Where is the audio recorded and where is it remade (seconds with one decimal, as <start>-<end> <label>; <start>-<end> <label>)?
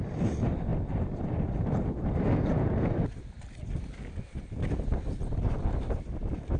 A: 0.0-6.6 remade